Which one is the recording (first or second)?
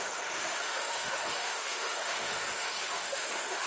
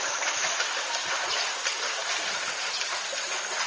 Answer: second